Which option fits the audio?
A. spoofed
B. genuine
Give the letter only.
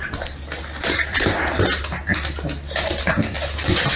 B